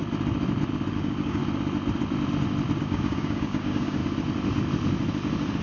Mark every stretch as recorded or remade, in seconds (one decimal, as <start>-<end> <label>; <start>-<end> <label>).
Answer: 0.0-0.9 recorded; 0.9-1.4 remade; 1.4-2.8 recorded; 2.8-4.0 remade; 4.0-5.6 recorded